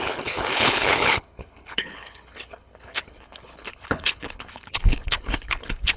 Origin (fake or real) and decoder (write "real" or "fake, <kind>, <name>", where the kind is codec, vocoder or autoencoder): fake, codec, HILCodec